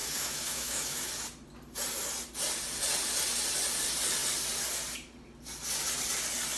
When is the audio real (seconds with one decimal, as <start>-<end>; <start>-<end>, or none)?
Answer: 1.1-6.6